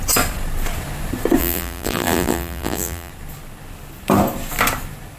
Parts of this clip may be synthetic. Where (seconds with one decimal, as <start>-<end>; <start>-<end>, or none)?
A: 1.4-3.1